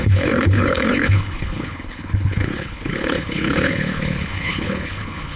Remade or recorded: remade